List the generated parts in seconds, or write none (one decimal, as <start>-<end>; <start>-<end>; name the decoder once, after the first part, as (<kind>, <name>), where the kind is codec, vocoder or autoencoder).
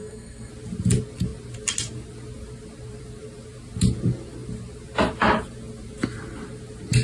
0.0-0.5 (codec, SNAC)